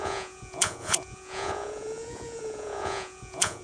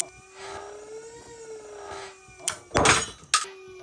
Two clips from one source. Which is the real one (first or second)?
second